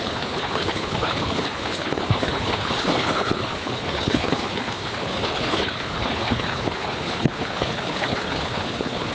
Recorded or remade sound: remade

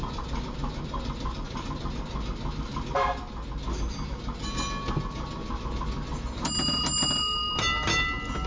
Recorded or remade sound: recorded